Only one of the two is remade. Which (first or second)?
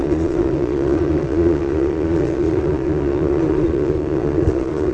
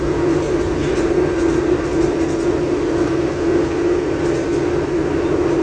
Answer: first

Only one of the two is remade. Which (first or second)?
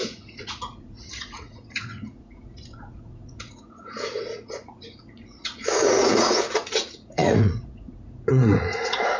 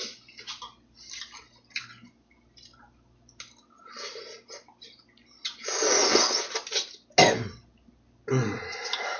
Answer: first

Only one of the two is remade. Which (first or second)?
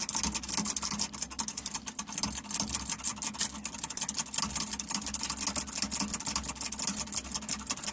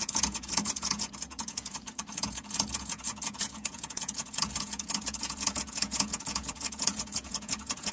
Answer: second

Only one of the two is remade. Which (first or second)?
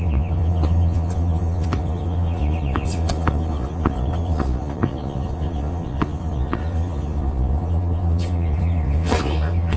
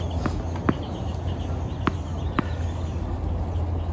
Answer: first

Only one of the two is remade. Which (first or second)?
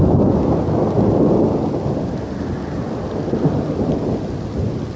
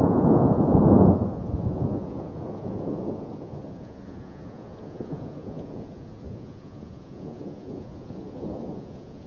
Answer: second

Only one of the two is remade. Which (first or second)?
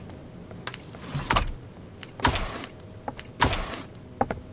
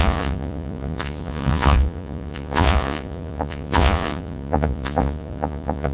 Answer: second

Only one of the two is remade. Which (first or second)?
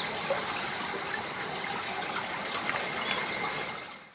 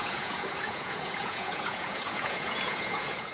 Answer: second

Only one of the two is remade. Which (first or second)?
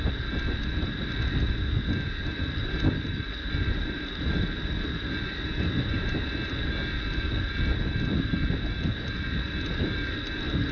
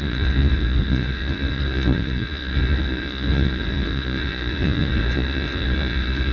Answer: second